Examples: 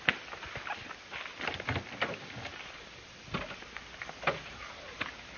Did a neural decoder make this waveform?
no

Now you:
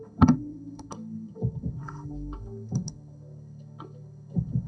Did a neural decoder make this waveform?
yes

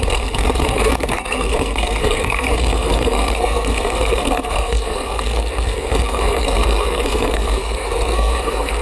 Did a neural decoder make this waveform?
yes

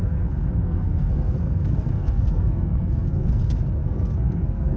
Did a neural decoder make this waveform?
yes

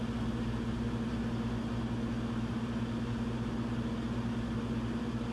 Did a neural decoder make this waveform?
no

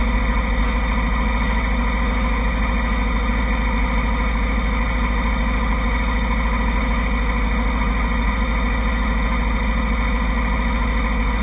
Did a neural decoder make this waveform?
no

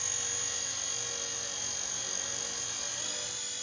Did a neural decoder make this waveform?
no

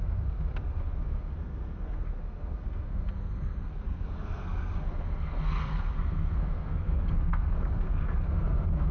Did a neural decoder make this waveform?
yes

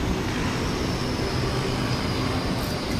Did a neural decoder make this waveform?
no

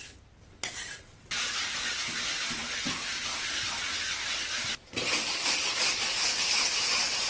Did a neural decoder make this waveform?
no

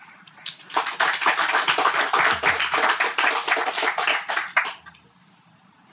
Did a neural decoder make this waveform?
no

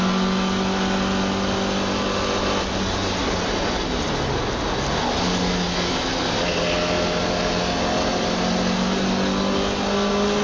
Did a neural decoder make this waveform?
no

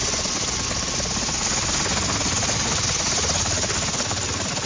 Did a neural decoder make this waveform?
no